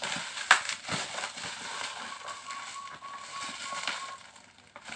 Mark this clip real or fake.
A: real